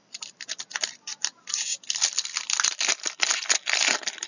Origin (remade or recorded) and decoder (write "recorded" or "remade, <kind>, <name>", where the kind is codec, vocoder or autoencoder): recorded